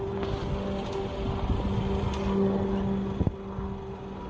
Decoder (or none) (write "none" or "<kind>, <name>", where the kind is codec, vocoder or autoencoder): none